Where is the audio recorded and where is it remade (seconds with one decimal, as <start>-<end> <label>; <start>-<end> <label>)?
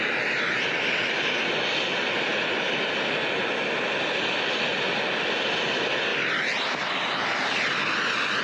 0.0-8.4 recorded